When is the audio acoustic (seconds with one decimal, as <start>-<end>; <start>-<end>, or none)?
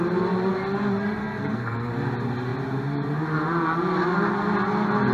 0.0-1.2; 1.9-5.1